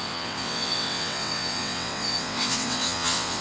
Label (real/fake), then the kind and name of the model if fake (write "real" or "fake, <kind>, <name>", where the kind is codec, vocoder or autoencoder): fake, vocoder, WaveNeXt